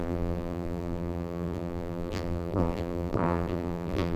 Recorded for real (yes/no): no